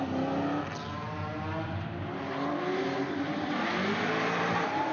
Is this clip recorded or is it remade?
recorded